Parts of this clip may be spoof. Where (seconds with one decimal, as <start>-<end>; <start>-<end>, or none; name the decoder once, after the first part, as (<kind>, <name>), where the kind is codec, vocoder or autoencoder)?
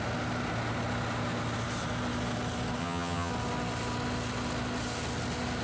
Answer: 2.8-3.3 (vocoder, HiFi-GAN)